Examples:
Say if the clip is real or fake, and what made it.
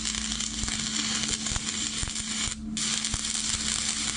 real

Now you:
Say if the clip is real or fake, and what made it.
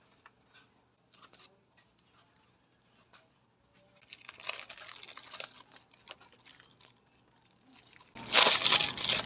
real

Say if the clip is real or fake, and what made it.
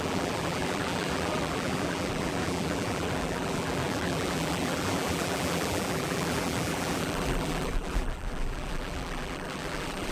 fake, vocoder, BigVGAN v2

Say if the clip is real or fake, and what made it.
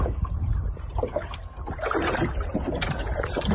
fake, vocoder, BigVGAN v2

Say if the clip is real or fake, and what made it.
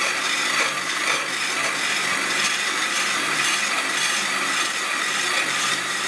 fake, vocoder, BigVGAN v2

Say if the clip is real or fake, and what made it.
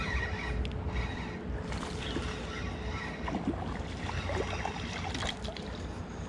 real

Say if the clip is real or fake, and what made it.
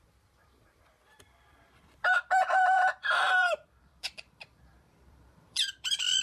fake, vocoder, BigVGAN v2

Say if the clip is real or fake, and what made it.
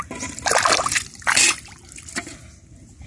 real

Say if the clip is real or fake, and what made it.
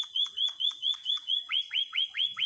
fake, vocoder, Vocos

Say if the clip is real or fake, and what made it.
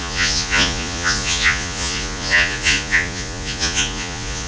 fake, vocoder, Vocos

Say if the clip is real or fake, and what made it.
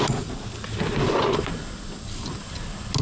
real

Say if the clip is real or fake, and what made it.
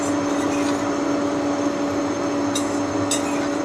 real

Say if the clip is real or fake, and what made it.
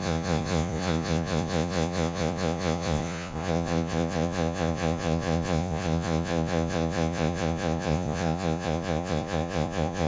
fake, vocoder, Vocos